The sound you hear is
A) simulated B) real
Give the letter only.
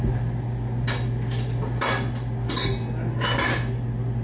B